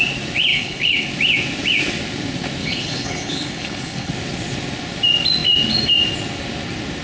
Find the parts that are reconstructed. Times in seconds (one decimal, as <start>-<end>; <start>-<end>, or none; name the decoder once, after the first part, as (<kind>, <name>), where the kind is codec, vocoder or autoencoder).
0.5-1.1 (codec, HILCodec); 2.6-4.1